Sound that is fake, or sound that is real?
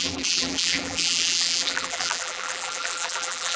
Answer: fake